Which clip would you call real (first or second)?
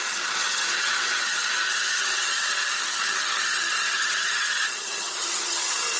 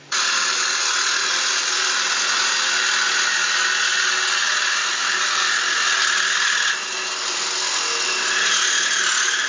second